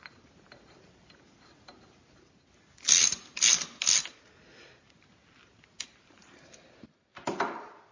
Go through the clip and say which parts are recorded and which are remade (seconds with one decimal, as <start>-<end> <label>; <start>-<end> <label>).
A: 0.0-7.1 recorded; 7.1-7.9 remade